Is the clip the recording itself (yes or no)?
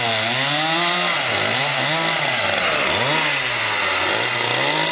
yes